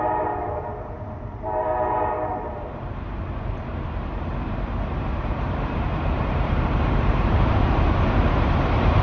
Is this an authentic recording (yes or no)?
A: no